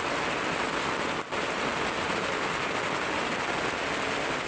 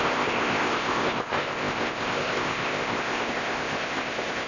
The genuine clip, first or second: first